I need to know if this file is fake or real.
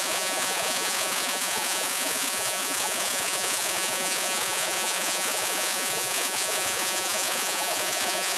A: fake